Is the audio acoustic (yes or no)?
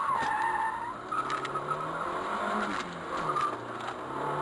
yes